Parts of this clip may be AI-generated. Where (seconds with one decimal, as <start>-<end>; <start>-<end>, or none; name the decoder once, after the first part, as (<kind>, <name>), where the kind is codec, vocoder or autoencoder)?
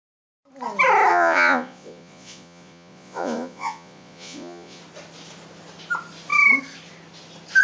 1.1-4.8 (vocoder, Vocos)